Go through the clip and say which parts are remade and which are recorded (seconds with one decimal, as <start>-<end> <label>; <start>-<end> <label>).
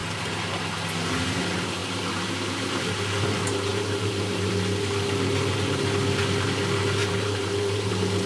0.0-0.6 remade; 0.6-1.8 recorded; 1.8-2.6 remade; 2.6-3.7 recorded; 3.7-4.5 remade; 4.5-7.0 recorded; 7.0-7.9 remade; 7.9-8.3 recorded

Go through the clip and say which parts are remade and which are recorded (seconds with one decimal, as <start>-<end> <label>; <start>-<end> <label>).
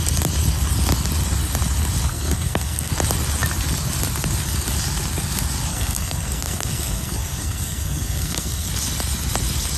0.0-2.1 recorded; 2.1-2.9 remade; 2.9-5.7 recorded; 5.7-8.7 remade; 8.7-9.8 recorded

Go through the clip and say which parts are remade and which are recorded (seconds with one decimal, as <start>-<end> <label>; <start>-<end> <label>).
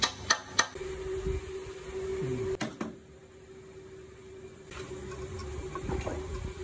0.0-6.6 recorded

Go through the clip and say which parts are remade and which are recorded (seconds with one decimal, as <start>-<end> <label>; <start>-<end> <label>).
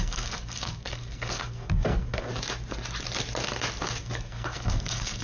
0.0-2.3 remade; 2.3-4.0 recorded; 4.0-5.2 remade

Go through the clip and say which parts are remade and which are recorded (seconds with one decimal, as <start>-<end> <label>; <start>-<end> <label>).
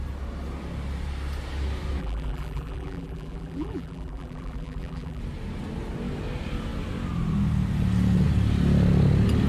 0.0-2.0 recorded; 2.0-5.2 remade; 5.2-9.5 recorded